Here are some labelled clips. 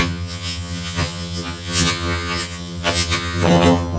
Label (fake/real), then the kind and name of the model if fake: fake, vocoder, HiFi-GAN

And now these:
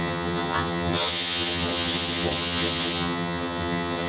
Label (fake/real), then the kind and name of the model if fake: fake, vocoder, HiFi-GAN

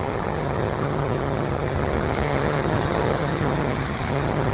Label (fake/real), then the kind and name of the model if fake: fake, vocoder, HiFi-GAN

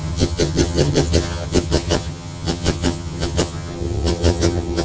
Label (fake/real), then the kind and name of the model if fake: fake, vocoder, HiFi-GAN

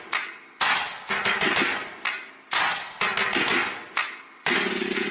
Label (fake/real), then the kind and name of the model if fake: real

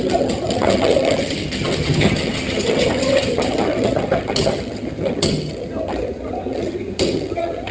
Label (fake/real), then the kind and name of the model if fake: fake, vocoder, HiFi-GAN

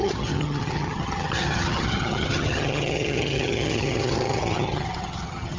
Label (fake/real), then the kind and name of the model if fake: fake, vocoder, HiFi-GAN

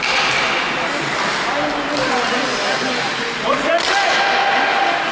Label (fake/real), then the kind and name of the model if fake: real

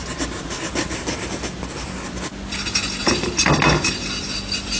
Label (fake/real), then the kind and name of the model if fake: real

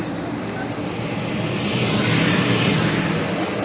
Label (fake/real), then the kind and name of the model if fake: real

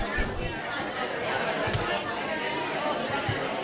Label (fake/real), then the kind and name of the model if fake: real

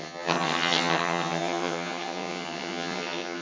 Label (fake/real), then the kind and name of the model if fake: fake, vocoder, HiFi-GAN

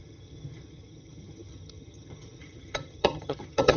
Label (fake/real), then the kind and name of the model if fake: fake, vocoder, HiFi-GAN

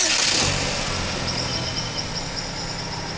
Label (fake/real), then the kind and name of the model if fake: real